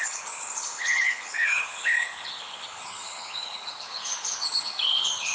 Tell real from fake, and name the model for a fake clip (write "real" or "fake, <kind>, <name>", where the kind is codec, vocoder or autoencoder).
fake, codec, HILCodec